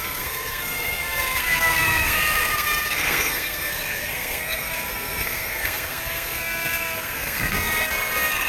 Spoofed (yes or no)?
yes